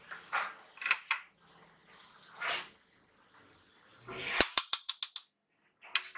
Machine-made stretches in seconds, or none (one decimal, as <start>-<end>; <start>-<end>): 3.9-4.9